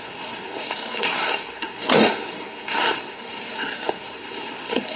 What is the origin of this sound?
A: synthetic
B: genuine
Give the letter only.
A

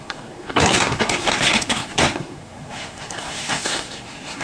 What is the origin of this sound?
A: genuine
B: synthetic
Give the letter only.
B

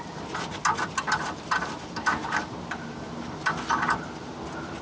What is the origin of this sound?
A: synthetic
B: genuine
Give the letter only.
B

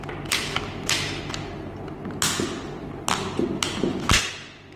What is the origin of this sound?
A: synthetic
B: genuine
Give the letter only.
B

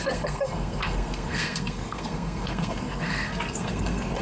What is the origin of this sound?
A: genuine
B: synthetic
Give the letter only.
B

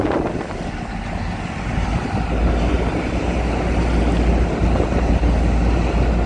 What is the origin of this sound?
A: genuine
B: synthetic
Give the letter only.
A